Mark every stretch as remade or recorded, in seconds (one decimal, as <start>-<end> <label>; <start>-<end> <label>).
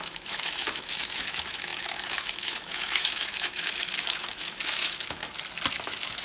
0.0-5.2 remade; 5.2-5.7 recorded; 5.7-6.2 remade